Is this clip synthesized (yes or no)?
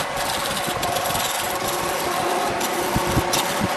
no